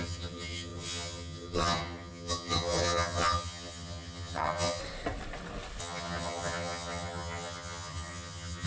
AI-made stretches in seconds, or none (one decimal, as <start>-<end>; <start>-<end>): 0.0-4.8; 5.8-8.7